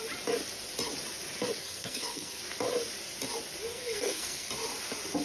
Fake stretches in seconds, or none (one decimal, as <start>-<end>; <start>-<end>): 1.6-2.4; 3.7-4.5